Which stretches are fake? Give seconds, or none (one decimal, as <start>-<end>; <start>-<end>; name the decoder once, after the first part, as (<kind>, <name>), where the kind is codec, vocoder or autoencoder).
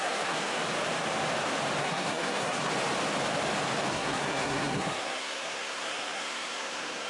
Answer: 0.0-0.6 (codec, SNAC); 1.8-2.7; 3.9-7.1